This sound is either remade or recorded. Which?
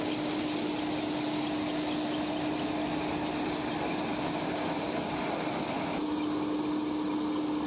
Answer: recorded